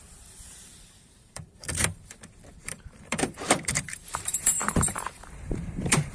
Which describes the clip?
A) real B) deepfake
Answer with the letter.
B